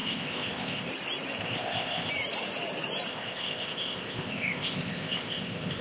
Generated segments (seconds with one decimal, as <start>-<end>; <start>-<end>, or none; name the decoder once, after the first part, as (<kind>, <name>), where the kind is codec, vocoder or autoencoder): 0.0-0.9 (codec, ZipCodec); 1.4-2.1; 3.1-5.8